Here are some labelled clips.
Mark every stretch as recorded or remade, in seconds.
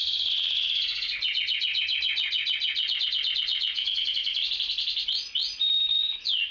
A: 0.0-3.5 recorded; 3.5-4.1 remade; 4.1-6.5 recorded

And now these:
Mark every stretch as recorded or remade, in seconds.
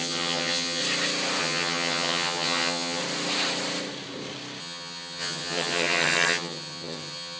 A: 0.0-0.8 remade; 0.8-1.4 recorded; 1.4-3.0 remade; 3.0-4.6 recorded; 4.6-7.4 remade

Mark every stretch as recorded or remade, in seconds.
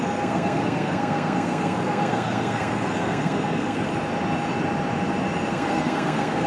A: 0.0-3.9 remade; 3.9-5.5 recorded; 5.5-6.5 remade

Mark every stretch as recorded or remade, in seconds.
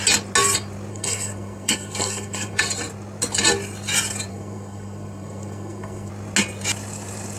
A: 0.0-0.9 recorded; 0.9-2.6 remade; 2.6-4.3 recorded; 4.3-6.1 remade; 6.1-7.4 recorded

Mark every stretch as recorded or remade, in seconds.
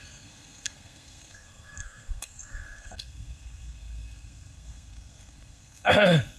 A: 0.0-6.4 remade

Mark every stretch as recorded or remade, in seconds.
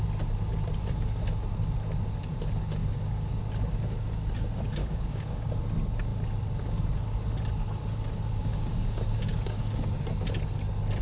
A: 0.0-2.8 recorded; 2.8-3.4 remade; 3.4-4.8 recorded; 4.8-5.6 remade; 5.6-8.4 recorded; 8.4-9.8 remade; 9.8-11.0 recorded